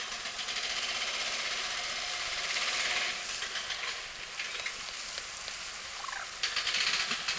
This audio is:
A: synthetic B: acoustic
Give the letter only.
B